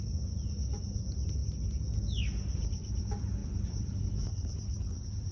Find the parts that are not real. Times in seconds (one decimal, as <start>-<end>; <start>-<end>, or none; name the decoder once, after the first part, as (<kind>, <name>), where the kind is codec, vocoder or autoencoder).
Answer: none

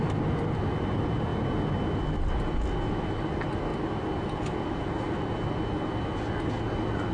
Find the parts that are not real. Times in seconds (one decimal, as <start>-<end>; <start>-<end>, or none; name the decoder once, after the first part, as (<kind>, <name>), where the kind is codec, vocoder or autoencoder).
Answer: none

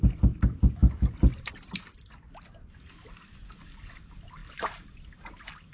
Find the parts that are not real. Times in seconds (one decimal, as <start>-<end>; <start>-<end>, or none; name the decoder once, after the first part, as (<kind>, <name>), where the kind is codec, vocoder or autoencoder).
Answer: none

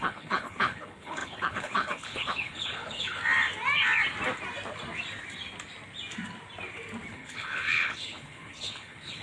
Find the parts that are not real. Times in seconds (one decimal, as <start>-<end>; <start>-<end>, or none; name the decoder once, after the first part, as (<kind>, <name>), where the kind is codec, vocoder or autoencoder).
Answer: 0.0-3.2 (codec, HILCodec); 7.1-9.2

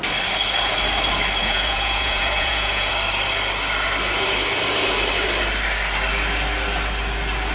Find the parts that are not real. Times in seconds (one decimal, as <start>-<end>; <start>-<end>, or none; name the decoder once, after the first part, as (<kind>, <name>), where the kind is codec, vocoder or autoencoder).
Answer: 1.4-2.9 (vocoder, Vocos)

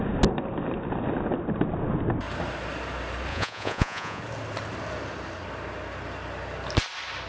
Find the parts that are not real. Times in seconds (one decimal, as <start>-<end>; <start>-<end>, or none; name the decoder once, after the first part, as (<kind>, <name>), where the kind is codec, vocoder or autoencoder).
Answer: 3.3-4.2 (vocoder, Vocos)